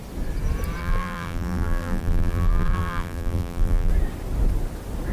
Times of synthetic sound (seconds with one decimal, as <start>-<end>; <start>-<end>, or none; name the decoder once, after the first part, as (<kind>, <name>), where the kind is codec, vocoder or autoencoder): 0.8-3.9 (vocoder, BigVGAN v2)